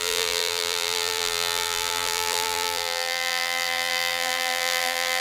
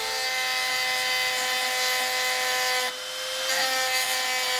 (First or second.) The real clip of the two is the second